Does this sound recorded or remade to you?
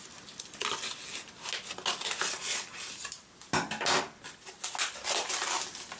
recorded